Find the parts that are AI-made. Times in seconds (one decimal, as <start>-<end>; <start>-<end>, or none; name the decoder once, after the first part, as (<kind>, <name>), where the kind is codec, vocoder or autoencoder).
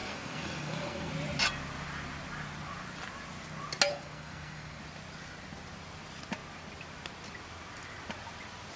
0.0-1.1 (codec, SNAC); 3.9-4.8